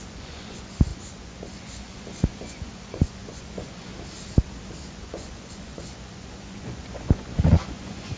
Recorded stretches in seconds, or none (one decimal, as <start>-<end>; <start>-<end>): 3.9-4.9